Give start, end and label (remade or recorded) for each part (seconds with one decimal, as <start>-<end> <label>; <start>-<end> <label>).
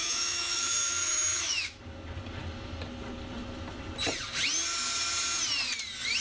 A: 0.0-1.8 remade; 1.8-6.2 recorded